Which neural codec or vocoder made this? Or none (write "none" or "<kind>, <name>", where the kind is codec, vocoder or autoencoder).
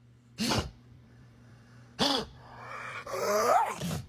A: vocoder, BigVGAN v2